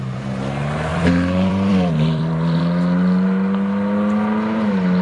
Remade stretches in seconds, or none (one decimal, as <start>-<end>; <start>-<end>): 0.9-2.6